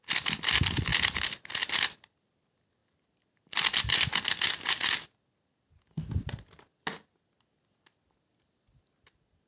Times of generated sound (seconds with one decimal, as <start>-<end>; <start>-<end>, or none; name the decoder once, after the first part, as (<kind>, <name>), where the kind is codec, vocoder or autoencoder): none